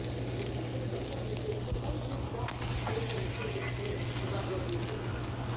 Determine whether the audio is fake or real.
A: real